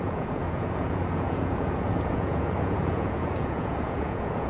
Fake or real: fake